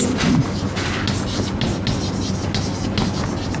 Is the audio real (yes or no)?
yes